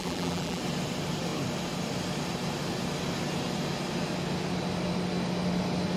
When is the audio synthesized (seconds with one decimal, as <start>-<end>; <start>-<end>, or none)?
0.0-0.6

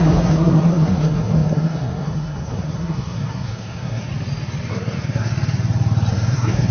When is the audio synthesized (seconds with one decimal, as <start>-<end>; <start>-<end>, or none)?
0.0-4.1; 4.7-5.3; 6.1-6.7

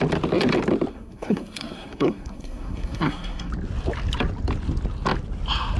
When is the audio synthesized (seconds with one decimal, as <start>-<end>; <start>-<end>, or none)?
0.9-3.5

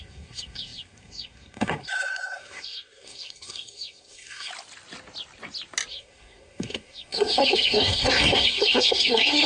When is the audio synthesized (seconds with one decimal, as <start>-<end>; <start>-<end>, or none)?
0.0-4.5; 5.9-9.5

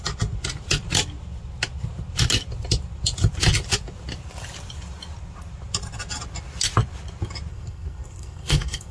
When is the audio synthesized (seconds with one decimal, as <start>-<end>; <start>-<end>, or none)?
7.5-8.9

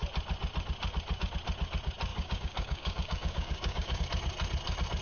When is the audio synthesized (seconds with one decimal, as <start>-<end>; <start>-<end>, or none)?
2.1-4.0

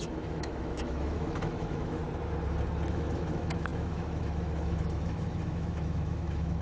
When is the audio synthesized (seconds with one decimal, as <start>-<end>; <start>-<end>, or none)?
0.0-2.0; 2.9-6.6

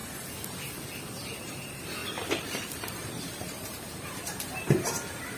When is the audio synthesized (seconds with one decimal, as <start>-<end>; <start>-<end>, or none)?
1.4-5.4